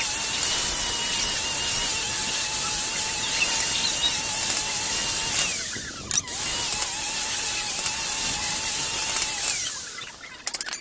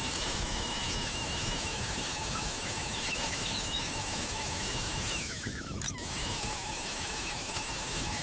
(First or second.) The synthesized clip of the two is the second